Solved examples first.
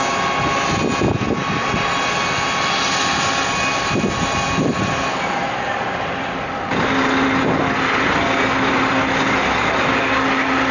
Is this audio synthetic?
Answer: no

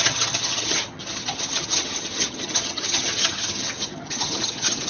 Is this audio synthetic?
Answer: yes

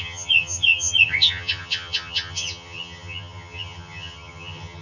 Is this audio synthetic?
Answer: yes